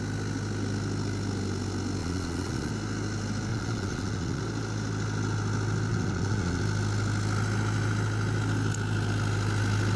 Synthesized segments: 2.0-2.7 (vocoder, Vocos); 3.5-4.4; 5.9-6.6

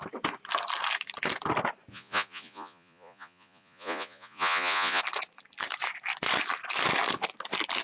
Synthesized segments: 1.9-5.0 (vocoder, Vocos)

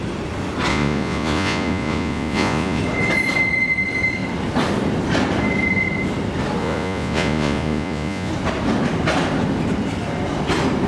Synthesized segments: 0.7-2.8 (vocoder, Vocos); 6.6-8.3

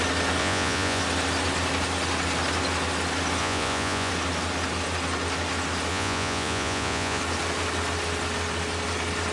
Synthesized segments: 0.4-1.0 (vocoder, Vocos); 3.4-4.1; 5.9-7.2

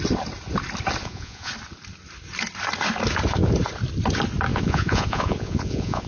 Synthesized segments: 1.0-1.5 (vocoder, Vocos); 4.5-6.1

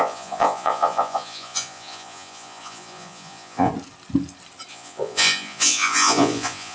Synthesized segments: 0.0-3.7 (vocoder, Vocos); 4.7-6.7

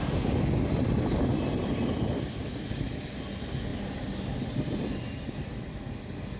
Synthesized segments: none